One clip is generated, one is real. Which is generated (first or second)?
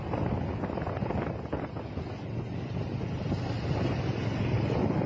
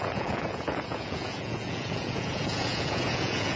second